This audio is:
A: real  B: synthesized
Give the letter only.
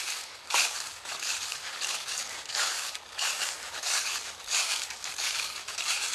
B